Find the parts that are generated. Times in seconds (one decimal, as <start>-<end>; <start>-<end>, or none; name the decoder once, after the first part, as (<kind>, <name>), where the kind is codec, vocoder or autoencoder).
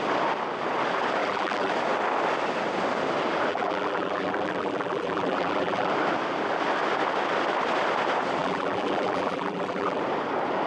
1.2-1.7 (vocoder, BigVGAN v2); 3.5-5.9; 8.4-10.0